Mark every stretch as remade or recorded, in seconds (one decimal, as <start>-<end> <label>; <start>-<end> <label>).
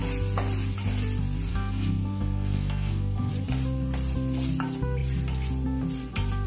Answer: 0.0-1.5 recorded; 1.5-3.3 remade; 3.3-6.5 recorded